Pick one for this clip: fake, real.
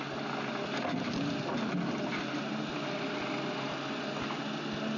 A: real